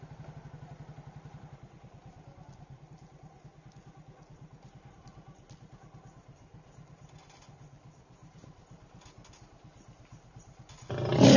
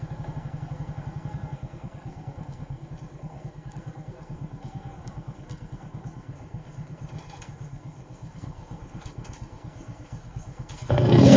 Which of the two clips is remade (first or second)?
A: second